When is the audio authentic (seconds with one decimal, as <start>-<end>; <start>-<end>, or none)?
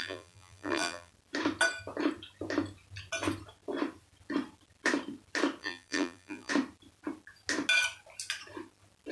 1.1-5.6; 6.5-9.1